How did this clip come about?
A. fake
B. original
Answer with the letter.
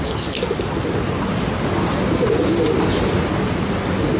B